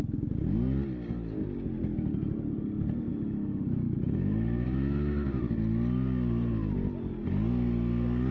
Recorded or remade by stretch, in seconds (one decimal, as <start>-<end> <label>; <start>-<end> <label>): 0.0-3.1 recorded; 3.1-5.4 remade; 5.4-8.3 recorded